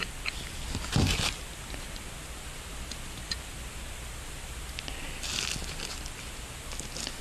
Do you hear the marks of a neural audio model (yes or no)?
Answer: no